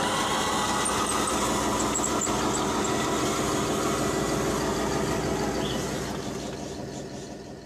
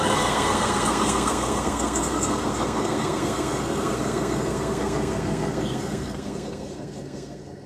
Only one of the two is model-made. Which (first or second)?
second